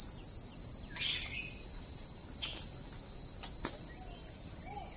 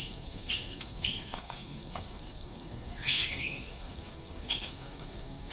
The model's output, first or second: second